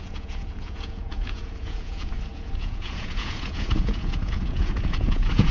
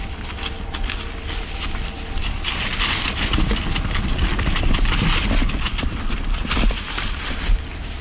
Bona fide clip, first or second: second